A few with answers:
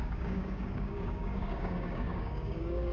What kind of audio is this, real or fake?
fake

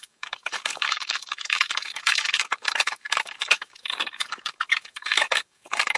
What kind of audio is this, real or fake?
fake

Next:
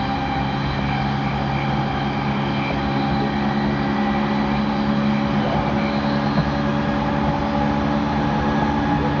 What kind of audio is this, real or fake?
real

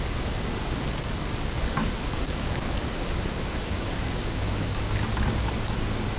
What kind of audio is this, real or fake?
fake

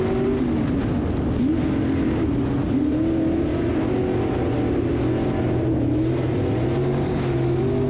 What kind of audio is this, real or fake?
real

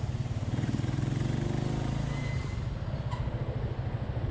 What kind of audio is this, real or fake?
real